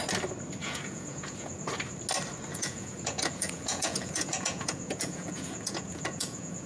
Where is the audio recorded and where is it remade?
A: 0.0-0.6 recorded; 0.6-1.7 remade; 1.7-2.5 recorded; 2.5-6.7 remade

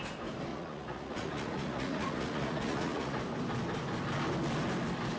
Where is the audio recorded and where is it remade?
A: 0.0-0.5 recorded; 0.5-3.2 remade; 3.2-5.2 recorded